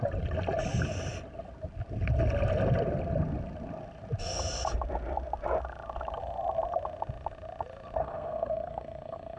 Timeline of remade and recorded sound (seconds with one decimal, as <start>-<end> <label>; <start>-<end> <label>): 0.0-8.0 recorded; 8.0-9.4 remade